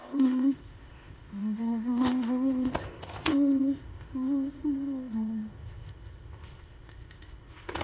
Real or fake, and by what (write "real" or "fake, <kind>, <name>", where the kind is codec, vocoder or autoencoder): fake, codec, ZipCodec